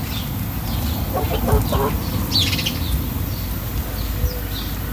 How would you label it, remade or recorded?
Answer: recorded